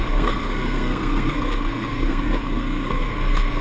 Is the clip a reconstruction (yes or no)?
yes